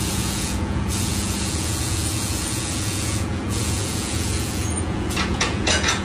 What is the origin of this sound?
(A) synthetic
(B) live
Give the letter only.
A